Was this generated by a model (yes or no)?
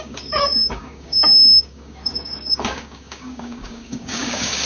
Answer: yes